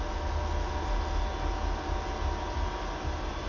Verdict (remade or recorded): recorded